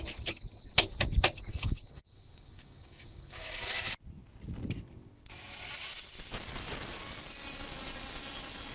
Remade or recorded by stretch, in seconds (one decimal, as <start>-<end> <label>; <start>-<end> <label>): 0.0-1.5 recorded; 1.5-3.6 remade; 3.6-8.7 recorded